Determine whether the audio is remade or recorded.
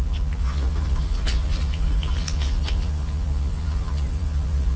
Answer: remade